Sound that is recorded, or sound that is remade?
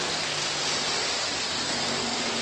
recorded